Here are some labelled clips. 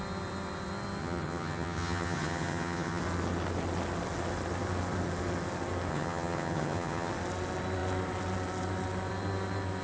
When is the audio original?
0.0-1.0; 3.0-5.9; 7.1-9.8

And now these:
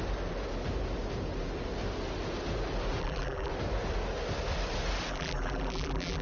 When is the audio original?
0.0-3.0; 3.5-5.1

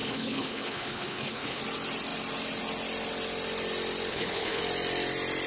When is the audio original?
1.6-4.1; 4.6-5.5

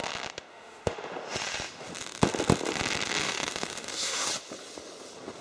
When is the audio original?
0.0-0.5; 1.1-3.2; 4.3-5.4

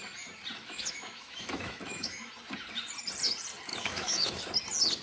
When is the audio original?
0.0-0.6; 2.3-3.7; 4.4-5.0

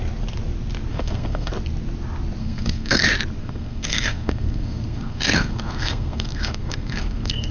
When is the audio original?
0.0-0.9; 1.5-2.4; 3.0-3.4

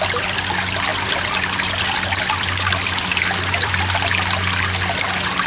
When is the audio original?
0.0-0.9; 3.8-5.5

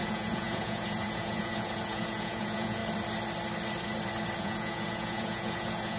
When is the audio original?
2.8-4.4